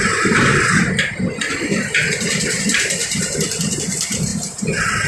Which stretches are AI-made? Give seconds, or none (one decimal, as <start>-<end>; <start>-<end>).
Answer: 0.0-3.0; 3.8-5.1